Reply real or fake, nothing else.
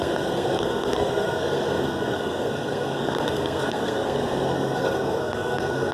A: fake